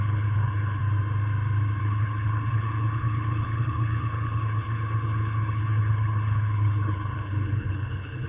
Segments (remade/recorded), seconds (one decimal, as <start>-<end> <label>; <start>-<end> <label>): 0.0-0.8 remade; 0.8-1.8 recorded; 1.8-8.3 remade